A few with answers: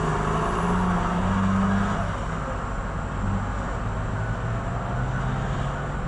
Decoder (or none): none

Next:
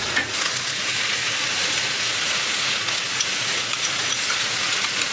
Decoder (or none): vocoder, Vocos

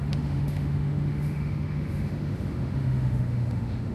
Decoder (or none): autoencoder, DAC-VAE